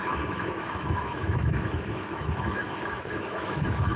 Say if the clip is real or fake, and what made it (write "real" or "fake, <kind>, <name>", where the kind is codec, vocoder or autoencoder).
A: fake, autoencoder, DAC-VAE